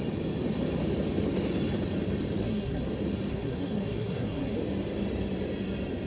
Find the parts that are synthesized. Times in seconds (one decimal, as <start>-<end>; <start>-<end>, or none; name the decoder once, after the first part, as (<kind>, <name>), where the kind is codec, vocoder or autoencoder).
2.4-2.9 (codec, SNAC); 3.3-4.6

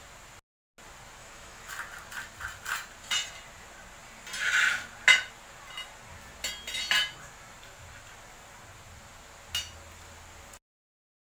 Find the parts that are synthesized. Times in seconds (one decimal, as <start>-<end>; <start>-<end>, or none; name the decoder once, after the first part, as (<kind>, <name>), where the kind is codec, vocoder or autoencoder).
1.2-1.7 (autoencoder, DAC-VAE)

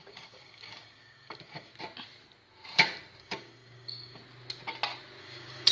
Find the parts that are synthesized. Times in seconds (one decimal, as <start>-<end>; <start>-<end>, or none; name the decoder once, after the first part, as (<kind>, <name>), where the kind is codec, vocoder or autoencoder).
0.0-1.7 (codec, DAC); 3.2-4.2; 5.2-5.7

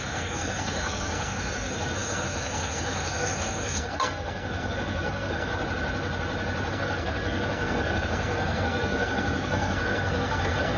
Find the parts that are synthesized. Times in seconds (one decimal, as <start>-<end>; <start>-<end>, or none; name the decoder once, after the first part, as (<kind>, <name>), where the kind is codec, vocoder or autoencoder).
0.0-5.5 (codec, SNAC); 6.7-10.8